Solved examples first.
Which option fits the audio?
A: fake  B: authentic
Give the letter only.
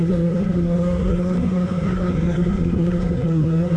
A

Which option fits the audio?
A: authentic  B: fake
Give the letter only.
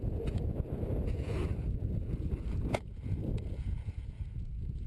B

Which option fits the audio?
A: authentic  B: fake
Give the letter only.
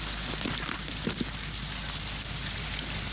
A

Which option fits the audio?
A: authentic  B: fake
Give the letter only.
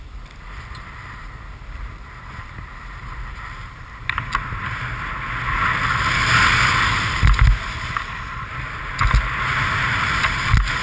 A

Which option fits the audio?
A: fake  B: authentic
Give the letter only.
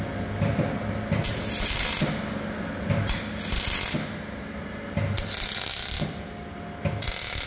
B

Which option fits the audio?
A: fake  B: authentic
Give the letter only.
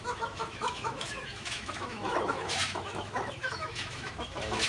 A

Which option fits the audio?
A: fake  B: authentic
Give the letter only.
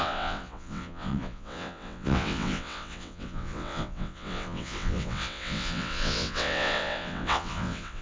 A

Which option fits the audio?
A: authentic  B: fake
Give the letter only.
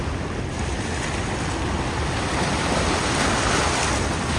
A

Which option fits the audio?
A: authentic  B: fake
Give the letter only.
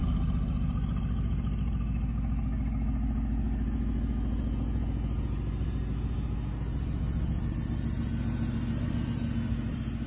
A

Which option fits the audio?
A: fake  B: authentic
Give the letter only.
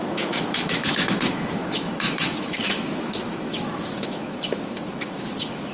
A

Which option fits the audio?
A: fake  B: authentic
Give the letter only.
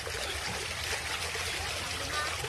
B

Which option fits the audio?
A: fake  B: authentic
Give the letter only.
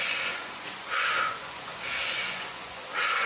A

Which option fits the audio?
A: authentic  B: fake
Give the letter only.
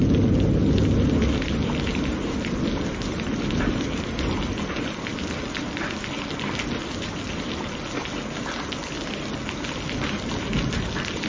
A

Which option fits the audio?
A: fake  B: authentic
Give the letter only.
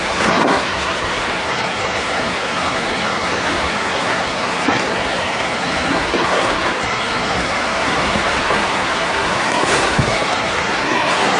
A